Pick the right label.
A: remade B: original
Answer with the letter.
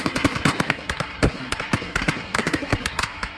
A